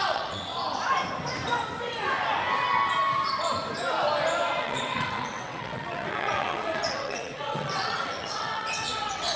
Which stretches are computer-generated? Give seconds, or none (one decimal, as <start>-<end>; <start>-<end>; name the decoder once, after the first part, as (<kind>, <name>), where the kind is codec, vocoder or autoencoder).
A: 0.0-0.5 (vocoder, WaveNeXt); 4.6-9.4